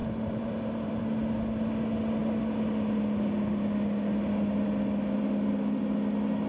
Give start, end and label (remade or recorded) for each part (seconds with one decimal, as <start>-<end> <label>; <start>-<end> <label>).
0.0-1.0 remade; 1.0-6.5 recorded